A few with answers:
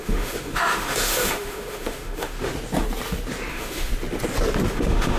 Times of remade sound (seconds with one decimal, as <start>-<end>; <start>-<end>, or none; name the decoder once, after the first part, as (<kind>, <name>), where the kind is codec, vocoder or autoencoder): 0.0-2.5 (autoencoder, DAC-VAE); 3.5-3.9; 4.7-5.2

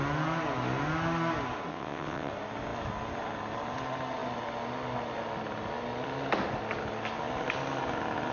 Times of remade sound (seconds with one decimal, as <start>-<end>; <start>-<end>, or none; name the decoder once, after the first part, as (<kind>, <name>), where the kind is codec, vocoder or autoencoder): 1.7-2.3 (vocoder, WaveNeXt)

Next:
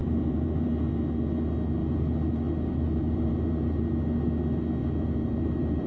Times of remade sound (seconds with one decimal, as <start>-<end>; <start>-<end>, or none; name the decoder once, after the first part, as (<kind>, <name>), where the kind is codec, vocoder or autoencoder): 0.0-0.7 (vocoder, BigVGAN v2); 1.8-3.9; 4.8-5.9

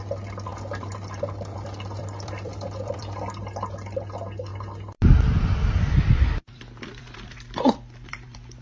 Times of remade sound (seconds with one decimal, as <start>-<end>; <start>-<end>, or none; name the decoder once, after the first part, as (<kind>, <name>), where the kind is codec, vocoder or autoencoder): 0.5-3.4 (vocoder, BigVGAN v2); 4.5-8.6

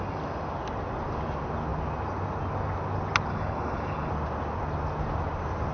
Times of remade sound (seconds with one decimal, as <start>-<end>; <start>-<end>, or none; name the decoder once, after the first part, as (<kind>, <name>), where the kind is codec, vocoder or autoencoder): 3.3-4.1 (codec, HILCodec)

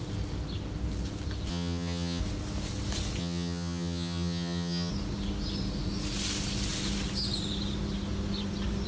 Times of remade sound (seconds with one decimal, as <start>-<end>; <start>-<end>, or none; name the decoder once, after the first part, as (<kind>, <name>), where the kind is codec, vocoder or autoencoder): 1.5-2.2 (vocoder, HiFi-GAN); 3.2-4.9

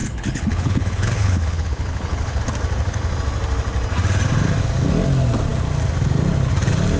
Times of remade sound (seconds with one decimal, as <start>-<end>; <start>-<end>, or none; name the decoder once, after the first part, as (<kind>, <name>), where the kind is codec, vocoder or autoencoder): 0.0-2.4 (codec, HILCodec)

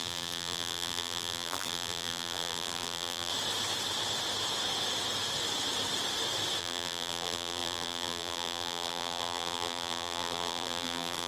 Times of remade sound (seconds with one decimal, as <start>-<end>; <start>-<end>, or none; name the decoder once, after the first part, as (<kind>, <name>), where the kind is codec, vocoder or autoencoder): 0.0-3.3 (vocoder, BigVGAN v2); 6.6-11.3